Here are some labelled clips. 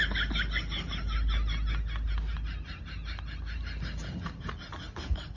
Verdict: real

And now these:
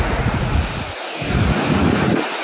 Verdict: fake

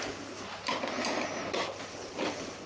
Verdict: real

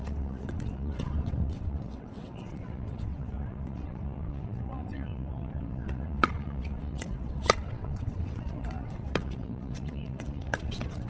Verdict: fake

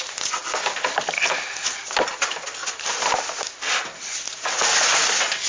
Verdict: real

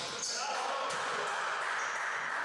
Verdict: fake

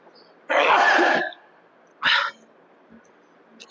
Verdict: real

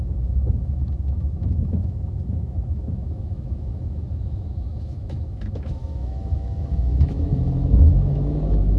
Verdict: fake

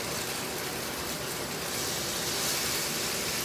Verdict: fake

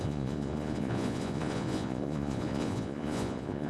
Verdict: fake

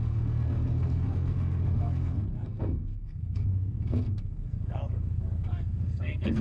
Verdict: fake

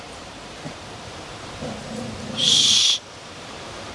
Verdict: fake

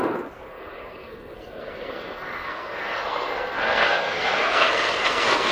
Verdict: fake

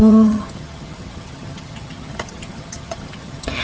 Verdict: fake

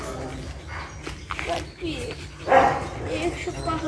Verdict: real